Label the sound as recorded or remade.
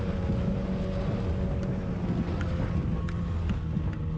recorded